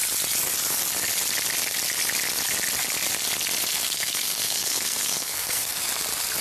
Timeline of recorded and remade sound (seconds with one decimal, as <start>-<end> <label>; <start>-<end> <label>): 0.0-3.7 recorded; 3.7-5.8 remade; 5.8-6.4 recorded